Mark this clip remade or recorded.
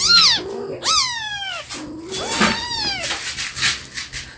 recorded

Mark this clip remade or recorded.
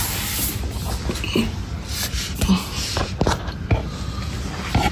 recorded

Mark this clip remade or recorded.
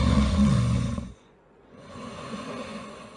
remade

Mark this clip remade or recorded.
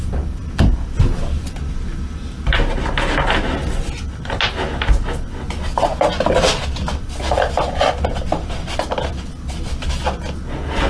recorded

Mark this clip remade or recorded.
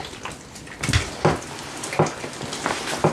recorded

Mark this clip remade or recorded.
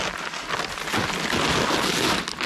recorded